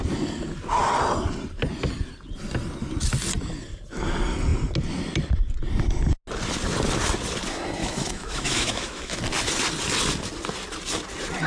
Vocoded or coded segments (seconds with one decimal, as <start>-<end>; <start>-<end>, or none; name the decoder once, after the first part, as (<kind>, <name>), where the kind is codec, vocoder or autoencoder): 7.8-9.2 (autoencoder, DAC-VAE)